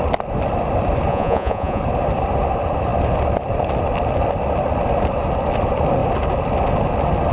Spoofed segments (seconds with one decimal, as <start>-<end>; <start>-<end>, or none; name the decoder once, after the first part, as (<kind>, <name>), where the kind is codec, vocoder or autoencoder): 1.1-1.8 (vocoder, Vocos)